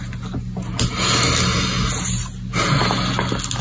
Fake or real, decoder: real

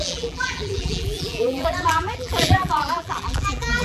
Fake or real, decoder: fake, vocoder, BigVGAN v2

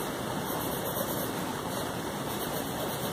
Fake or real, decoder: fake, vocoder, BigVGAN v2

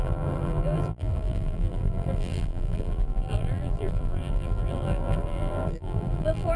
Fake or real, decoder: fake, vocoder, BigVGAN v2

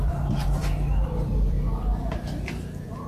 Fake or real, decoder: fake, vocoder, BigVGAN v2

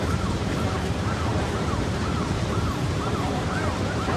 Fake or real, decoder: fake, vocoder, BigVGAN v2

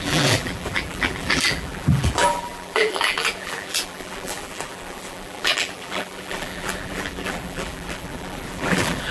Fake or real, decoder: fake, vocoder, BigVGAN v2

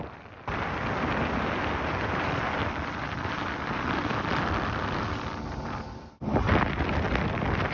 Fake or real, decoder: fake, vocoder, BigVGAN v2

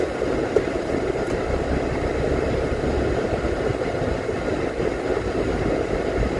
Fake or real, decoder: real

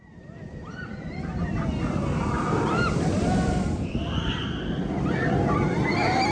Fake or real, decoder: fake, vocoder, BigVGAN v2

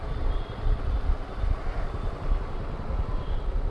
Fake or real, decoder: real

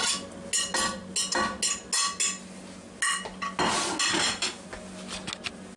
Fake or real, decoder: real